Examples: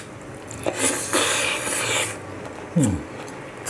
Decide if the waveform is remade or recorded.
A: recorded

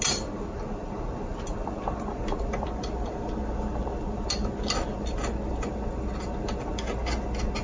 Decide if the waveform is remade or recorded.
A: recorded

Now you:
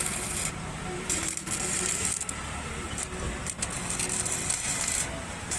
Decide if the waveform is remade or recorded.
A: recorded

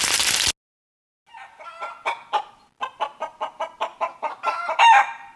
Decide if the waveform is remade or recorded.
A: recorded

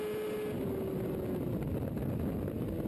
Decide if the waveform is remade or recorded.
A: recorded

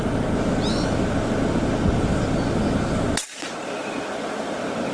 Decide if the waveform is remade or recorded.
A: recorded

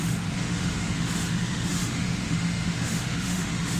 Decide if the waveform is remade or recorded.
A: remade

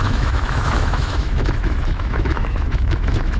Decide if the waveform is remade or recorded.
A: remade